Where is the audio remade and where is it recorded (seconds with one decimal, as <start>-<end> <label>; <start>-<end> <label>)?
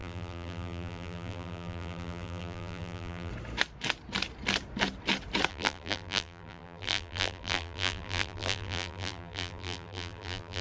0.0-3.3 remade; 3.3-5.5 recorded; 5.5-10.6 remade